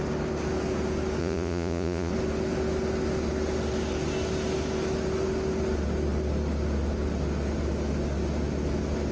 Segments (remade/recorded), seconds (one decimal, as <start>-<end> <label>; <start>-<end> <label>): 0.0-1.2 recorded; 1.2-2.1 remade; 2.1-9.1 recorded